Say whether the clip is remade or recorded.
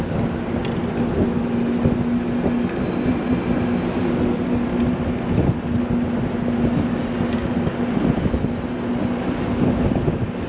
recorded